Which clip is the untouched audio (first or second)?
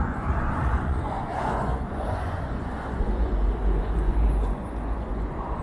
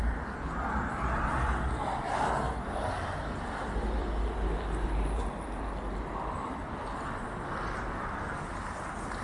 second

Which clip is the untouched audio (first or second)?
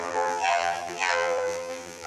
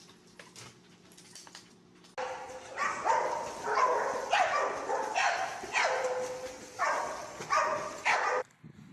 second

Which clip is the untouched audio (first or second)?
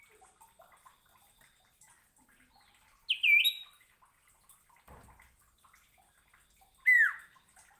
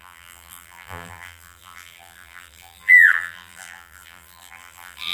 first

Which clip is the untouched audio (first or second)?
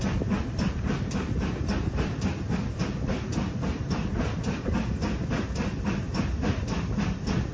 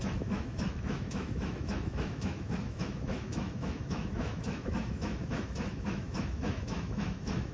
first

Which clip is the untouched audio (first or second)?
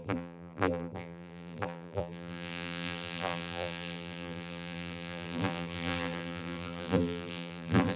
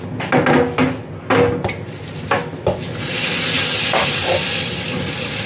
second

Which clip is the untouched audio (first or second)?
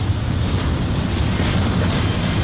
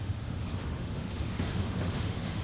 first